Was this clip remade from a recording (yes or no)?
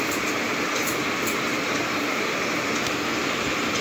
no